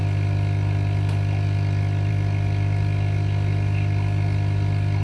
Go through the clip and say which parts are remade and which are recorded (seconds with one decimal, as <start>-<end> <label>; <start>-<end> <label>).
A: 0.0-5.0 recorded